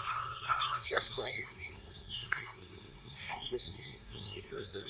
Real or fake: fake